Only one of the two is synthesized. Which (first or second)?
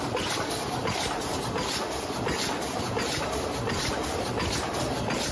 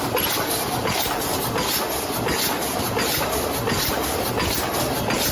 first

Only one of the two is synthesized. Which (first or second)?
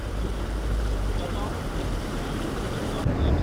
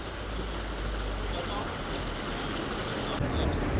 first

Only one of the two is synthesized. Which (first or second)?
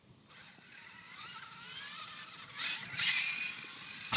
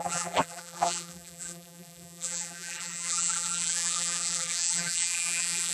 second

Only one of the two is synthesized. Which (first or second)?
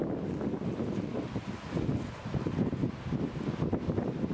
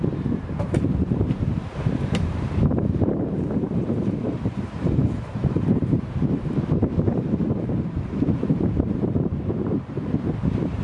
second